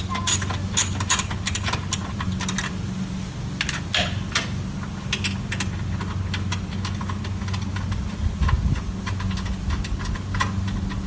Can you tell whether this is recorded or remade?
recorded